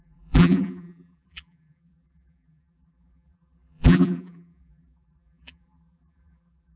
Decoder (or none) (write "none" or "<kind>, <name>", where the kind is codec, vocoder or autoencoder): vocoder, BigVGAN v2